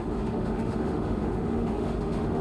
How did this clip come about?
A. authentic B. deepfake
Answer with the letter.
B